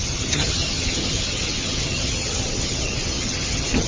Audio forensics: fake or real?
fake